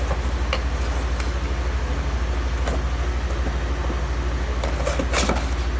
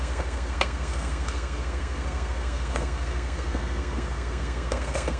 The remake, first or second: second